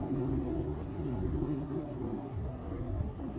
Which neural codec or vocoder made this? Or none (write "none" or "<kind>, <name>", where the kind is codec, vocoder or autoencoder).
codec, SNAC